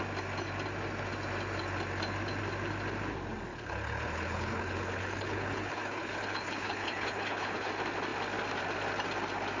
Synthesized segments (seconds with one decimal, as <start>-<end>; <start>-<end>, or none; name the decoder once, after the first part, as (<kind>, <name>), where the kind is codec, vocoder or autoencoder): 3.5-7.7 (codec, HILCodec)